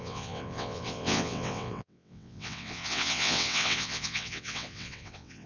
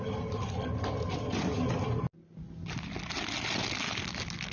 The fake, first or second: first